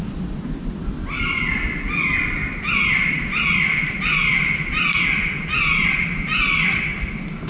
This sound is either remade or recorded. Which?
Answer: recorded